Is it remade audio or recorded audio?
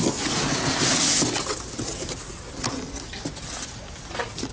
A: recorded